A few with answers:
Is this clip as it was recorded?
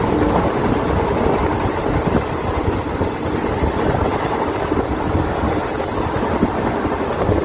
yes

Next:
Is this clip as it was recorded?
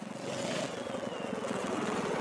no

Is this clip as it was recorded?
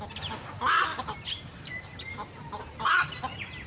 yes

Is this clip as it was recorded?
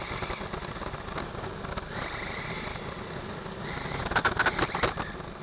yes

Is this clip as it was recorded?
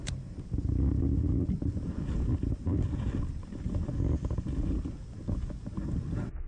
yes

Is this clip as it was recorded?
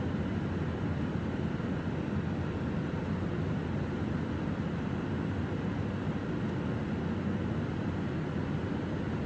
yes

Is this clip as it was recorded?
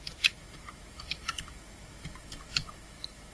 no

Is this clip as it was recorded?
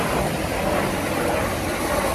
yes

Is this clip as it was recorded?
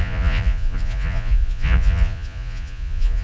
no